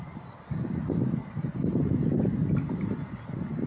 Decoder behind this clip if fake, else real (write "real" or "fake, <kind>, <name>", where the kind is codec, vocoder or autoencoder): real